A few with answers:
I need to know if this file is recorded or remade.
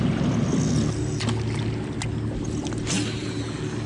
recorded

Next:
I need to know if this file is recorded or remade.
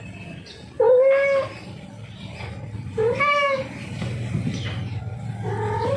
recorded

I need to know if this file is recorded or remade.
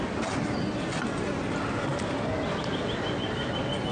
recorded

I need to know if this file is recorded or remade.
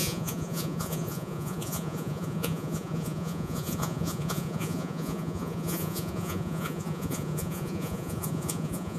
remade